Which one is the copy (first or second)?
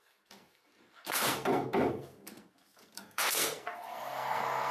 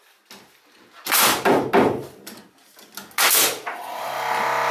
first